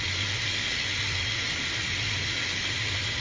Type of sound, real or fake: real